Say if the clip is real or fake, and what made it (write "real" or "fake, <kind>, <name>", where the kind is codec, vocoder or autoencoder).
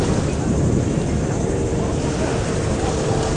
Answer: fake, vocoder, BigVGAN v2